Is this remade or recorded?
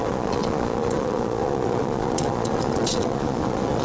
remade